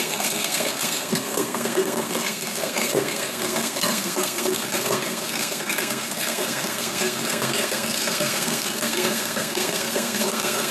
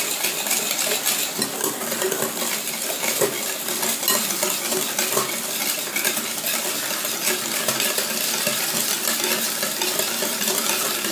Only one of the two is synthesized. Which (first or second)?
first